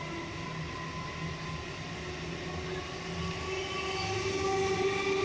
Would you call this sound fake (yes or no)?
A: no